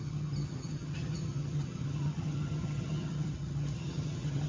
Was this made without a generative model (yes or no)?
no